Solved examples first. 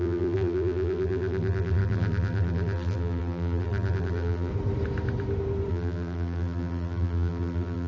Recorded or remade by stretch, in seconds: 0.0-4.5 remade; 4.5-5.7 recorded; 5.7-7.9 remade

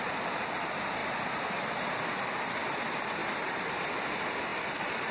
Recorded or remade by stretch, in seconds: 0.0-1.0 recorded; 1.0-1.8 remade; 1.8-3.2 recorded; 3.2-3.9 remade; 3.9-4.5 recorded; 4.5-5.1 remade

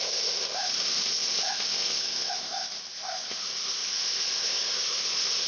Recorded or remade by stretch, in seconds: 0.0-5.5 remade